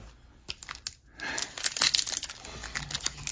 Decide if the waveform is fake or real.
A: real